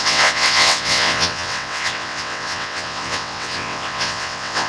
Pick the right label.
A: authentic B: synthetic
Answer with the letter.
B